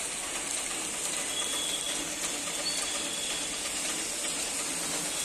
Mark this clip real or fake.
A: real